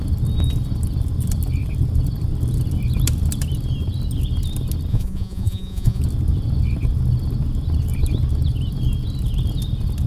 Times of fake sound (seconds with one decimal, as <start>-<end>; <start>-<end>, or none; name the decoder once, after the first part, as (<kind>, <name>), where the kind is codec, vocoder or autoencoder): 4.9-6.0 (vocoder, Vocos)

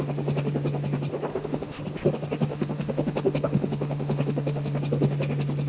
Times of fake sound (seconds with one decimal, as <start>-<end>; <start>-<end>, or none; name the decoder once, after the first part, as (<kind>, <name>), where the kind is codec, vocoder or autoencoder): 1.3-1.8 (autoencoder, DAC-VAE); 2.5-4.8

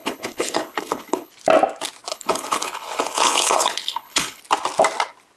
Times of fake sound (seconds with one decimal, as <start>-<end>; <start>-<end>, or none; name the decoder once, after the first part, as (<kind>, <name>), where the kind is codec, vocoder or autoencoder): 0.0-1.3 (codec, HILCodec); 2.1-4.4

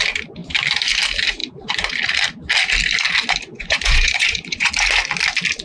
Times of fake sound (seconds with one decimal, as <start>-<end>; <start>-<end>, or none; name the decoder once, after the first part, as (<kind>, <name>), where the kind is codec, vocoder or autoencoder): 3.5-4.7 (vocoder, Vocos)